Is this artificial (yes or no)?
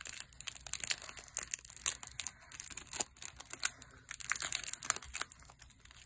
no